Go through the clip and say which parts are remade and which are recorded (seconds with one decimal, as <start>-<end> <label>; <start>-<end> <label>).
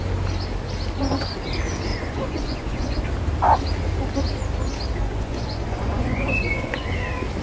0.0-1.9 recorded; 1.9-3.0 remade; 3.0-5.0 recorded; 5.0-6.9 remade; 6.9-7.4 recorded